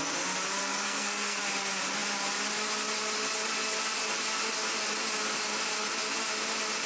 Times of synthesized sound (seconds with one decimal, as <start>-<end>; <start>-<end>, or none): 0.6-1.4